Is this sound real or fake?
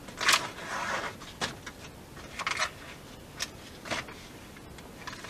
real